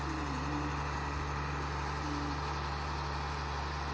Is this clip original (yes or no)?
yes